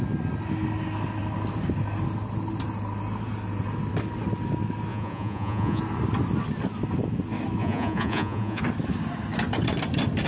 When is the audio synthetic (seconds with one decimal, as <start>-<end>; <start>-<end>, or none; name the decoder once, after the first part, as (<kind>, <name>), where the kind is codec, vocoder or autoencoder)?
4.9-5.8 (vocoder, Vocos); 7.6-8.6